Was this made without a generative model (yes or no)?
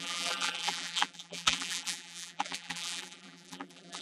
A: no